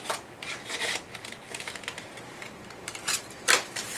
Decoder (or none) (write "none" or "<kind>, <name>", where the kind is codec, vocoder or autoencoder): vocoder, BigVGAN v2